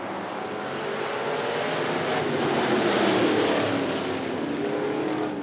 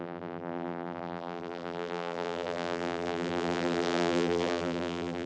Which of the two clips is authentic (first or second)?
first